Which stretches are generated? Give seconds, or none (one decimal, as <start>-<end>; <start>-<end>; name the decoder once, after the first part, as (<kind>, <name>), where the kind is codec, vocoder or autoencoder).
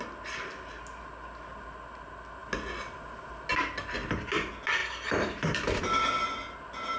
4.8-5.8 (vocoder, BigVGAN v2)